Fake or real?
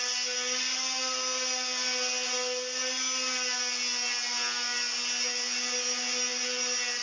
real